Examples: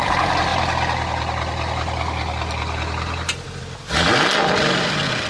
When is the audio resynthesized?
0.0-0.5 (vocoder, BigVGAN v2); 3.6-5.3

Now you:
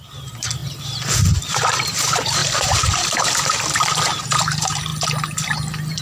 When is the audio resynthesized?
0.0-0.6 (vocoder, BigVGAN v2); 1.5-4.9

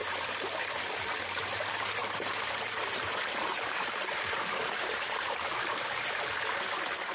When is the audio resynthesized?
0.0-0.7 (vocoder, BigVGAN v2); 2.0-6.3